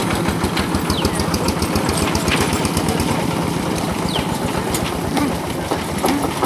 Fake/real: real